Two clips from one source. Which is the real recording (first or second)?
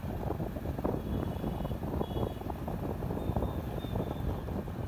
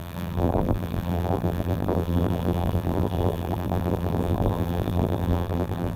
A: first